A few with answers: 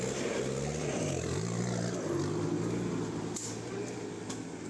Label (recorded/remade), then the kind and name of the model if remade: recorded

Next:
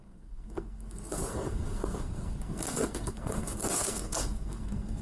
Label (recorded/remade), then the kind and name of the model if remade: remade, codec, SNAC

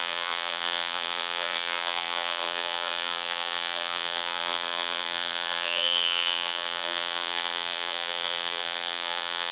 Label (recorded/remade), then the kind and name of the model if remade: remade, vocoder, BigVGAN v2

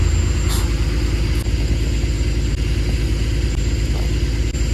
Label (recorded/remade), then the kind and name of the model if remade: recorded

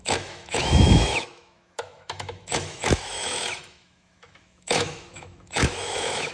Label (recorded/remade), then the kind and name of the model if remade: remade, autoencoder, DAC-VAE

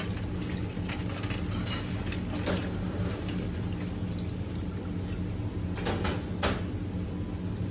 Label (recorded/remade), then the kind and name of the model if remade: recorded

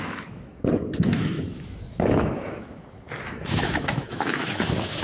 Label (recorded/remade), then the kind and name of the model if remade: remade, autoencoder, DAC-VAE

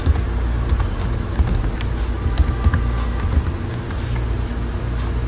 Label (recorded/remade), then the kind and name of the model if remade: recorded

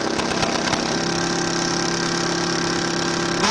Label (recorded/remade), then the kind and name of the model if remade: recorded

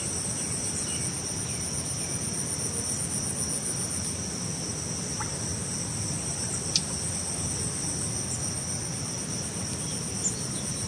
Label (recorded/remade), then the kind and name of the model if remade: recorded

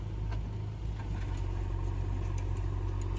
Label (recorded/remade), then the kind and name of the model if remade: recorded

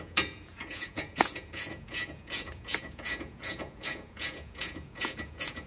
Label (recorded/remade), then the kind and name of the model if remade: remade, vocoder, Vocos